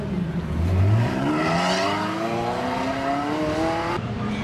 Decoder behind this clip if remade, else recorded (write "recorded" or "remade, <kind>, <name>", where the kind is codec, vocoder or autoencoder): recorded